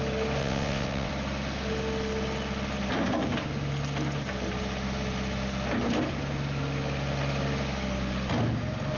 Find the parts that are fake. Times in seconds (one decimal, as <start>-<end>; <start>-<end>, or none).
0.4-1.1